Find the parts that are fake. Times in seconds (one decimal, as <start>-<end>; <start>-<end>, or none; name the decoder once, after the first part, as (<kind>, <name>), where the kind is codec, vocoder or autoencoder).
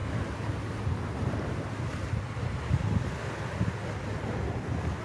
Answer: none